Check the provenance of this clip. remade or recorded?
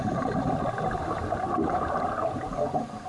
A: recorded